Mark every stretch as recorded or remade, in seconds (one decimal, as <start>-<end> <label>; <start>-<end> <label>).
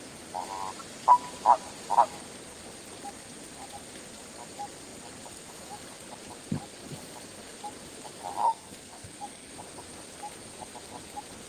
0.0-8.4 recorded; 8.4-9.5 remade; 9.5-11.5 recorded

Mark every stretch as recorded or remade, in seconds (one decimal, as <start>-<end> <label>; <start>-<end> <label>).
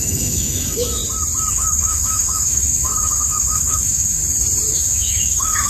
0.0-1.0 remade; 1.0-1.5 recorded; 1.5-4.2 remade; 4.2-4.7 recorded; 4.7-5.7 remade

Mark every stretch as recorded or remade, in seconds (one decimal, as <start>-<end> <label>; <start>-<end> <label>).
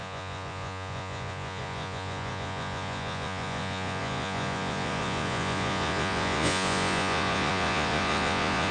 0.0-8.7 remade